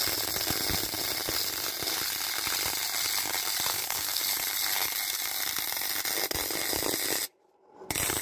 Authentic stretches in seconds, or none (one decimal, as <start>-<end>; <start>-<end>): 0.0-3.7; 4.2-8.2

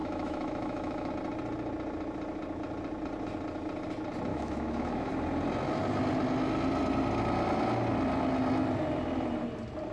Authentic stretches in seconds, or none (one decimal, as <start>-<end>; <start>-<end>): 1.1-4.3; 5.1-9.9

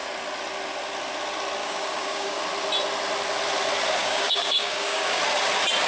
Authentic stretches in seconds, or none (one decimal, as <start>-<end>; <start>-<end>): 0.0-1.6; 2.4-4.0; 5.2-5.9

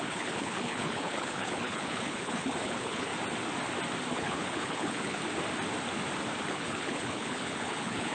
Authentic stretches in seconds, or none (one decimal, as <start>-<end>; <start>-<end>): 3.1-4.1; 5.2-6.5

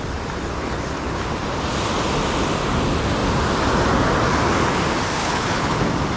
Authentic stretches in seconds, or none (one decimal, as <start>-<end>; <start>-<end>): 0.0-5.2; 5.8-6.2